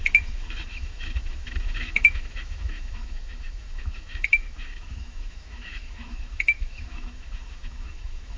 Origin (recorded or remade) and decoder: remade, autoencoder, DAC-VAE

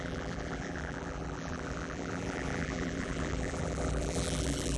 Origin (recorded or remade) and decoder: remade, vocoder, BigVGAN v2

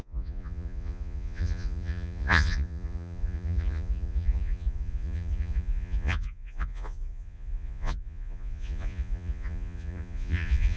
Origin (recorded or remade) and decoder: remade, vocoder, Vocos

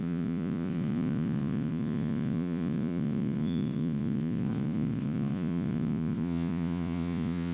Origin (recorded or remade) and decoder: remade, vocoder, Vocos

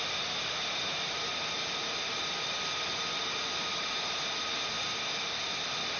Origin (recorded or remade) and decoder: recorded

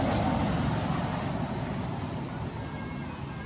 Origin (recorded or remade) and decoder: recorded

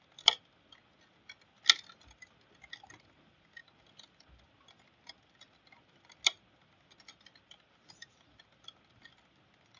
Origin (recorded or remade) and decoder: recorded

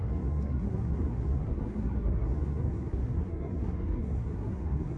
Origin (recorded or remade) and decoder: remade, codec, SNAC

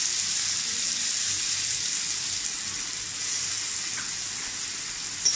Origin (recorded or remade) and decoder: recorded